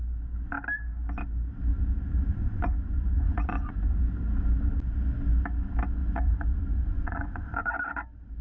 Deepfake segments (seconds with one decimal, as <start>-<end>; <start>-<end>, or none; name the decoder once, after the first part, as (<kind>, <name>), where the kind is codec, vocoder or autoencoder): 1.7-4.0 (vocoder, Vocos); 6.0-7.7